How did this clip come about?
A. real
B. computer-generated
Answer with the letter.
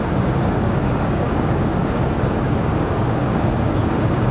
B